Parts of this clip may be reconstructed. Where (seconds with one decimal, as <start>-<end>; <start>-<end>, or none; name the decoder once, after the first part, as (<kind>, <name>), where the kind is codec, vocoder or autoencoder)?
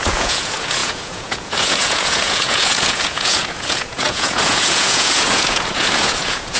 0.0-6.6 (vocoder, Vocos)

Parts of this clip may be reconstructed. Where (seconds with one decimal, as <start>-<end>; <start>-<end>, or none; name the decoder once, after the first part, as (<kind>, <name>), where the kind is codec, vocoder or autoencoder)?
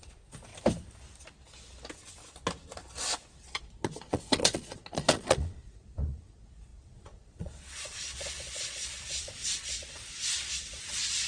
0.0-0.5 (vocoder, Vocos); 3.4-11.3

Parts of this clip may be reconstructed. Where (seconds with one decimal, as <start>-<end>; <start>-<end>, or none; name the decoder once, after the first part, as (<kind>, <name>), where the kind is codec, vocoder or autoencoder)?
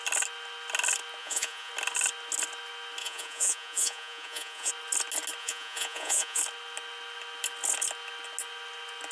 1.2-1.7 (vocoder, Vocos); 3.0-4.7; 5.4-6.4